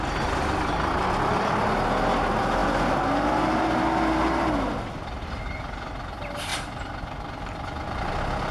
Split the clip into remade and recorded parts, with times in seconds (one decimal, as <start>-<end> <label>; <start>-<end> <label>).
0.0-8.5 recorded